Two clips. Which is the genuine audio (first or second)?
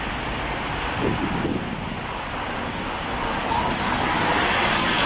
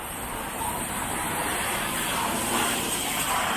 first